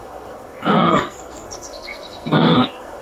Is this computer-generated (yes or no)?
yes